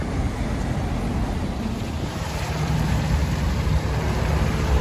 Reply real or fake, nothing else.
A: fake